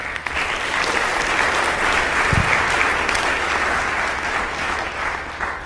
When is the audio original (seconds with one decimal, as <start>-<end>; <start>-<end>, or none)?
0.0-5.7